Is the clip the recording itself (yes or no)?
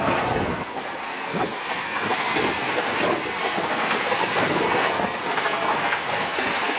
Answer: no